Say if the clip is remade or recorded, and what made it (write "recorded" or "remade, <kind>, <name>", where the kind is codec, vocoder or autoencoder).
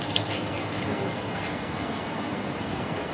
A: remade, codec, SNAC